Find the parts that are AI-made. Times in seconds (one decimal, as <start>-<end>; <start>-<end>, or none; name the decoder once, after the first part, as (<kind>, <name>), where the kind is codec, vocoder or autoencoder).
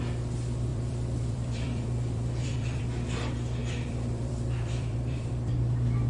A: 0.7-2.8 (vocoder, BigVGAN v2); 3.6-5.3